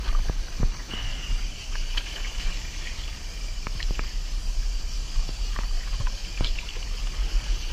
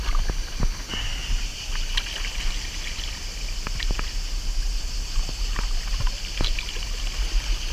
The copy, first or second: first